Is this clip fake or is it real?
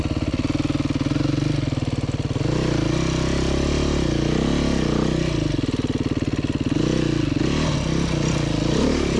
real